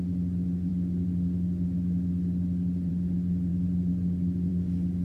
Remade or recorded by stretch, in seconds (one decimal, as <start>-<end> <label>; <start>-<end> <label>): 0.0-5.0 recorded

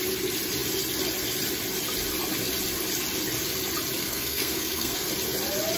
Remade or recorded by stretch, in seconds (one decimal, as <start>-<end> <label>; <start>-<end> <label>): 0.0-4.0 recorded; 4.0-5.1 remade; 5.1-5.8 recorded

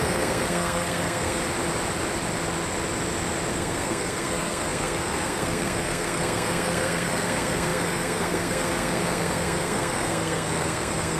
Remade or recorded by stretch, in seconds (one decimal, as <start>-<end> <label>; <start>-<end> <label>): 0.0-1.4 remade; 1.4-3.5 recorded; 3.5-11.2 remade